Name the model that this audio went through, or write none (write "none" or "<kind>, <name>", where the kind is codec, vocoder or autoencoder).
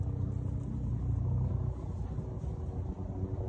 none